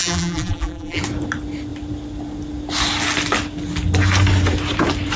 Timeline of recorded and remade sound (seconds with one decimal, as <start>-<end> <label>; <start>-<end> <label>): 0.0-1.0 remade; 1.0-5.2 recorded